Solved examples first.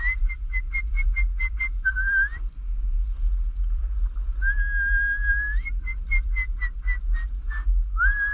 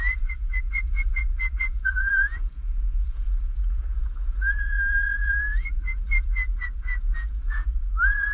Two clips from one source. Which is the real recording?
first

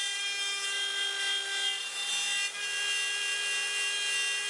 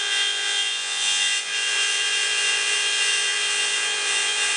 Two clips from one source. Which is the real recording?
first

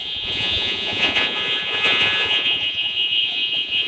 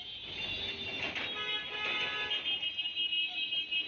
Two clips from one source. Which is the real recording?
second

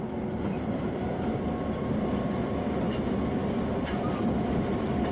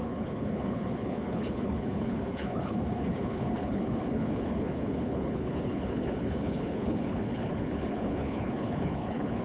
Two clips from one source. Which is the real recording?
first